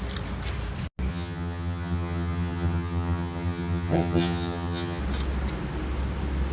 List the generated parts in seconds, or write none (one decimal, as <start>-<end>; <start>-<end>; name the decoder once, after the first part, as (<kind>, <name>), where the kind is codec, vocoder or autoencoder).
1.1-5.0 (vocoder, HiFi-GAN)